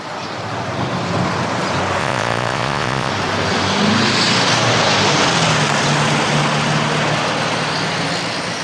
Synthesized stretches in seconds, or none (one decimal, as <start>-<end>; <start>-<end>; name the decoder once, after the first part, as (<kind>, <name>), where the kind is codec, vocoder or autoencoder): 2.0-3.1 (vocoder, Vocos)